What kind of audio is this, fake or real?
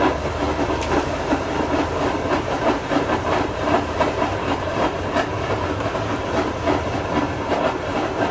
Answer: fake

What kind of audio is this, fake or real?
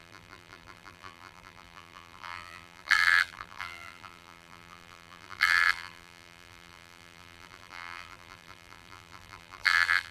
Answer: fake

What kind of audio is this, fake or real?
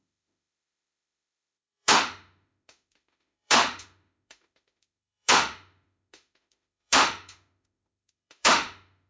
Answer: fake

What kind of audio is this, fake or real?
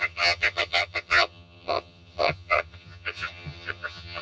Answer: fake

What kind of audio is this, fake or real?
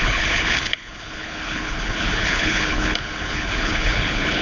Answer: fake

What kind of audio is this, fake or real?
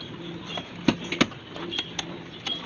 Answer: real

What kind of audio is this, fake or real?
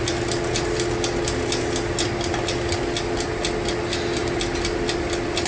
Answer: real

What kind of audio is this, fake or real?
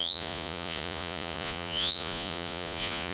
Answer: fake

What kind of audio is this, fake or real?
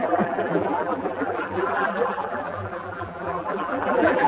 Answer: fake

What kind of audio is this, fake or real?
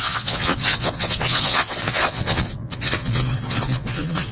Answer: fake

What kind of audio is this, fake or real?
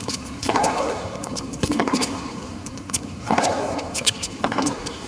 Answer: fake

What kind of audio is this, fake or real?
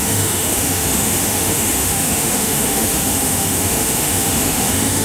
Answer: fake